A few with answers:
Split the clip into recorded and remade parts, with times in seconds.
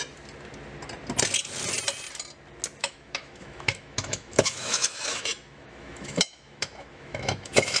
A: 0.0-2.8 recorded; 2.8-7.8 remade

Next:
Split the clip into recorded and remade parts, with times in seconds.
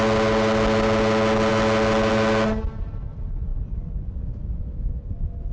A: 0.0-5.5 recorded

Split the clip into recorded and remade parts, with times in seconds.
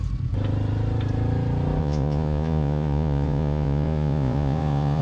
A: 0.0-1.8 recorded; 1.8-5.0 remade